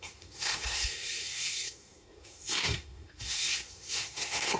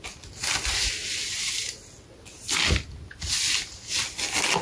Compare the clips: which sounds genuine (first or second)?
second